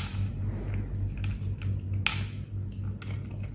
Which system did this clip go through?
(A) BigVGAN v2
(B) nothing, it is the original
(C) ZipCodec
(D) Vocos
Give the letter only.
B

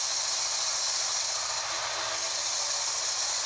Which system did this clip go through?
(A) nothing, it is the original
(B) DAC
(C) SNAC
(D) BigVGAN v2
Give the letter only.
A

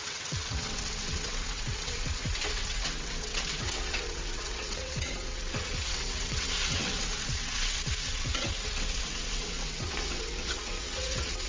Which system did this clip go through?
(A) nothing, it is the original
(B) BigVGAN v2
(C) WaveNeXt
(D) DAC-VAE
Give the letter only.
C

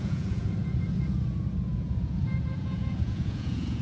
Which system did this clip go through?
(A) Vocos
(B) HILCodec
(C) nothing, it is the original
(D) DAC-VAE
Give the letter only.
A